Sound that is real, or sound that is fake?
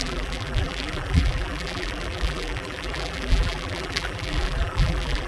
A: fake